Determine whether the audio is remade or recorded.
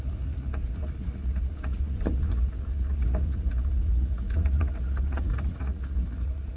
remade